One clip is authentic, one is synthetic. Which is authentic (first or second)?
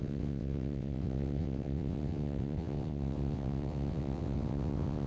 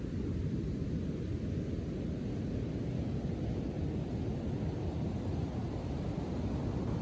second